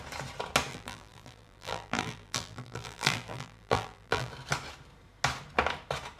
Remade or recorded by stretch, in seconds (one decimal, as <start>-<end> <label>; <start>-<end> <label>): 0.0-0.7 recorded; 0.7-4.3 remade; 4.3-6.2 recorded